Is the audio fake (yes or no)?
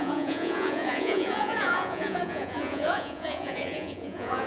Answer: yes